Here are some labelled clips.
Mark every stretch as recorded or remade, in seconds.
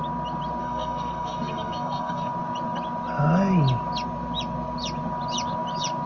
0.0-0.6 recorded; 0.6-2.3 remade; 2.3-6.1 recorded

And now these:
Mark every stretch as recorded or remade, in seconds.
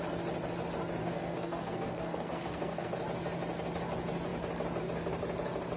0.0-1.0 recorded; 1.0-2.9 remade; 2.9-5.8 recorded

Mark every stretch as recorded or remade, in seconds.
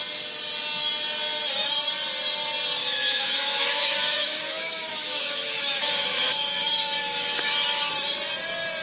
0.0-2.8 recorded; 2.8-7.9 remade; 7.9-8.8 recorded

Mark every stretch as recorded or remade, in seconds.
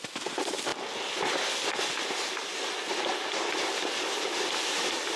0.0-5.2 recorded